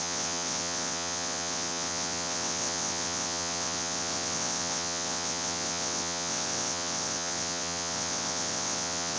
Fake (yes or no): yes